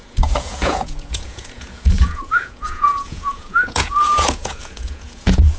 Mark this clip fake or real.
fake